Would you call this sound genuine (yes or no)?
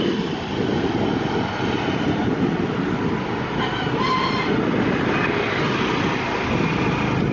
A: yes